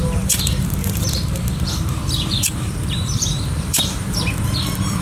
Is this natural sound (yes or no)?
no